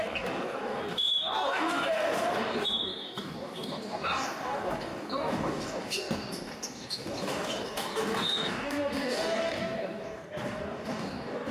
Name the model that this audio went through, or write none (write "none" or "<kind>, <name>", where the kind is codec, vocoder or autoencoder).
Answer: codec, DAC